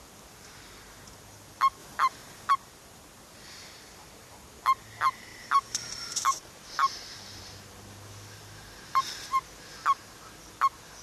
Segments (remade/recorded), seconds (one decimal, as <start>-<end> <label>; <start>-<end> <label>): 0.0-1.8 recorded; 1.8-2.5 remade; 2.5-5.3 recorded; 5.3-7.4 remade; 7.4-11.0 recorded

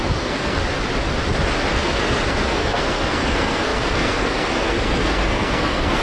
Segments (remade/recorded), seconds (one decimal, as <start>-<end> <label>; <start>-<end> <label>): 0.0-0.6 remade; 0.6-1.7 recorded; 1.7-6.0 remade

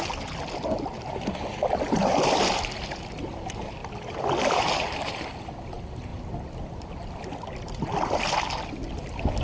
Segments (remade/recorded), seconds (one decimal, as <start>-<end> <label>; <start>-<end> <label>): 0.0-9.4 recorded

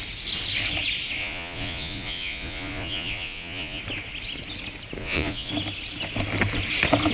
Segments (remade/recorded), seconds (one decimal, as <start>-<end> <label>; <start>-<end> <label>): 0.0-1.2 recorded; 1.2-3.8 remade; 3.8-5.0 recorded; 5.0-5.5 remade; 5.5-7.1 recorded

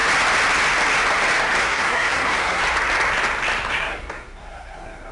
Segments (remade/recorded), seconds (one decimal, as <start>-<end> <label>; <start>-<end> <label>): 0.0-1.6 recorded; 1.6-2.6 remade; 2.6-3.7 recorded; 3.7-5.1 remade

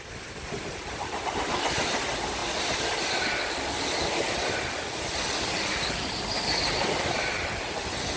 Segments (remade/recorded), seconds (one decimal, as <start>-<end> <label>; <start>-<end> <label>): 0.0-8.2 recorded

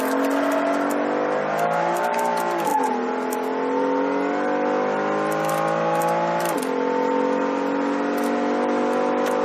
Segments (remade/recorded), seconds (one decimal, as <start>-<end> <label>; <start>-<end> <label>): 0.0-9.4 recorded

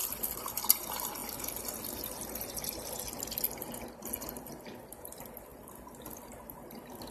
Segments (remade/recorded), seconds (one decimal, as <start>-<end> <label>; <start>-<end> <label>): 0.0-0.6 remade; 0.6-5.5 recorded; 5.5-6.3 remade; 6.3-7.1 recorded